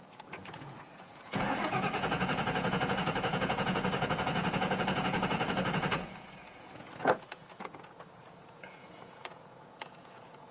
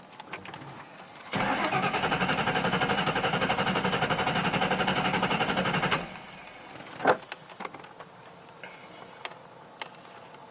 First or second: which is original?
second